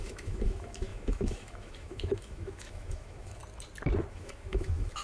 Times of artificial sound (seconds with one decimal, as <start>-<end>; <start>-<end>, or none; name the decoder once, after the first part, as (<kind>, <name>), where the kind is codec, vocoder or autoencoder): 0.0-3.4 (autoencoder, DAC-VAE); 4.1-5.0